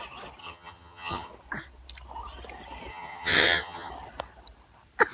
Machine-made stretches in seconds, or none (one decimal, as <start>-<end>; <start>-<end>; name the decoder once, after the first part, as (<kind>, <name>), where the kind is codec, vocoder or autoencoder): 0.4-1.3 (vocoder, HiFi-GAN); 2.9-3.9